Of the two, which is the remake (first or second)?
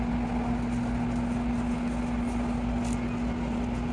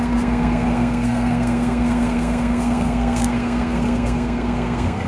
second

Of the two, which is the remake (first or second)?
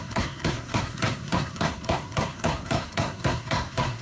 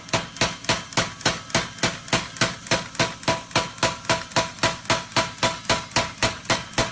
first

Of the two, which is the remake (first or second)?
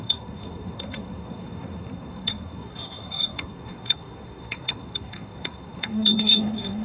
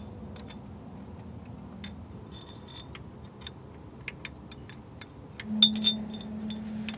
first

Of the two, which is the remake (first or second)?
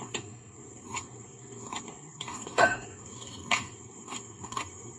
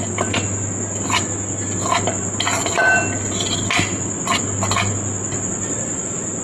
first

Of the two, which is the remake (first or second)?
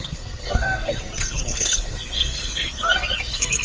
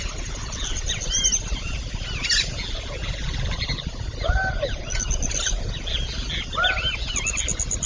first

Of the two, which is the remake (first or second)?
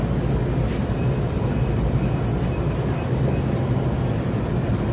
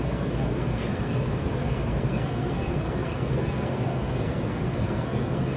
second